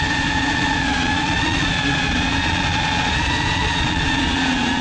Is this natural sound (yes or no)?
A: no